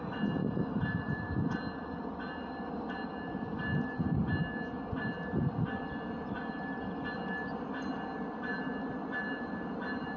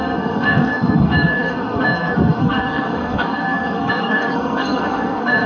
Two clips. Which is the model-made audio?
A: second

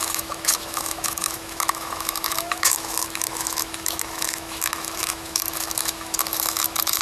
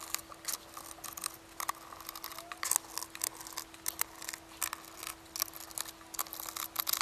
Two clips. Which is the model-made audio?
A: first